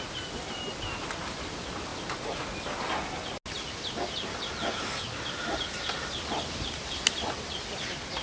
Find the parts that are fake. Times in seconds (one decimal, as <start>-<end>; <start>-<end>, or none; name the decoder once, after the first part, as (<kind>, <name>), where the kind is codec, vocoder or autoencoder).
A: 0.0-1.9 (vocoder, BigVGAN v2); 6.8-8.2